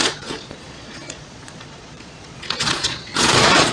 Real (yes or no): no